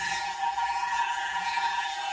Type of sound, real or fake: fake